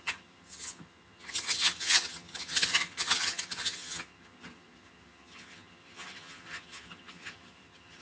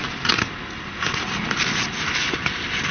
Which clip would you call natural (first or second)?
second